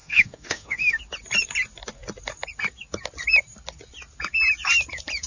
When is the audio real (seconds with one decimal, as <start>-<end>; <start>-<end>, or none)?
1.0-5.3